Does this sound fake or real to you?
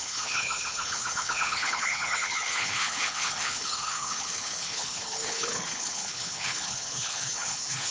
fake